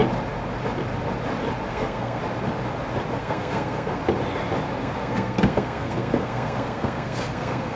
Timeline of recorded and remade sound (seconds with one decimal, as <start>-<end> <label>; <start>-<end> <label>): 0.0-1.7 recorded; 1.7-2.2 remade; 2.2-3.2 recorded; 3.2-4.0 remade; 4.0-4.8 recorded; 4.8-7.8 remade